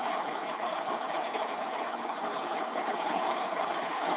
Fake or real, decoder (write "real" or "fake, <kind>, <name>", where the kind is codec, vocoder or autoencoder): fake, codec, HILCodec